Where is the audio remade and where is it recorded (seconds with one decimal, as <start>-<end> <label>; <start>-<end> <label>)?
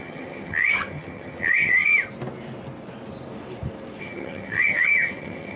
0.0-1.9 remade; 1.9-4.0 recorded; 4.0-5.6 remade